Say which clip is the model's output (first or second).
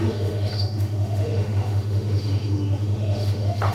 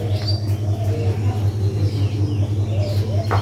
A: first